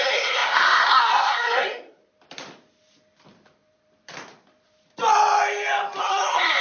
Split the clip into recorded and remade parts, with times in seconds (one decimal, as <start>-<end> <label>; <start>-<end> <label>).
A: 0.0-2.0 remade; 2.0-6.0 recorded; 6.0-6.6 remade